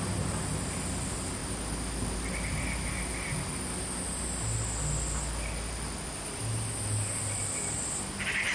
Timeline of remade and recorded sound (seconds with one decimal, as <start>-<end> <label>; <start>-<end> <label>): 0.0-8.5 recorded